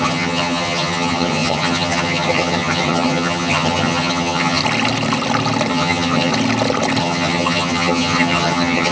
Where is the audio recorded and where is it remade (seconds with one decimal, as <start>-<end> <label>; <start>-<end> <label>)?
0.0-4.6 remade; 4.6-5.7 recorded; 5.7-6.3 remade; 6.3-7.0 recorded; 7.0-8.9 remade